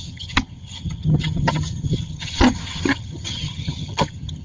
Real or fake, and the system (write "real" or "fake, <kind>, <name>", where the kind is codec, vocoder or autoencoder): fake, vocoder, HiFi-GAN